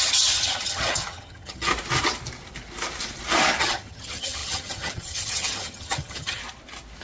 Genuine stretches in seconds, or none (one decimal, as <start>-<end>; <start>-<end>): 1.7-3.6; 6.4-7.0